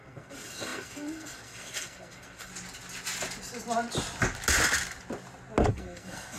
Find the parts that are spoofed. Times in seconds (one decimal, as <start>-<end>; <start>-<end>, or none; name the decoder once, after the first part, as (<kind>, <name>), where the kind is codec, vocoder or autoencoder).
0.0-2.5 (codec, SNAC); 5.7-6.4